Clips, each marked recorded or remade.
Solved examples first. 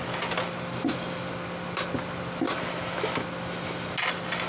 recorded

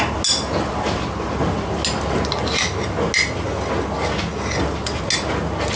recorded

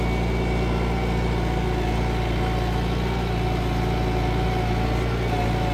recorded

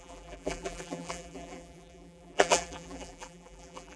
remade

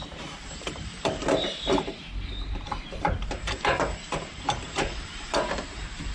remade